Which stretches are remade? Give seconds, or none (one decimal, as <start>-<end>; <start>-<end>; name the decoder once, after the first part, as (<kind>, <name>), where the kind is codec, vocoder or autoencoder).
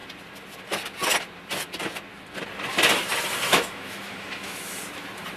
3.5-4.8 (autoencoder, DAC-VAE)